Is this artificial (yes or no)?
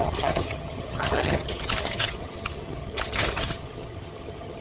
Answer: yes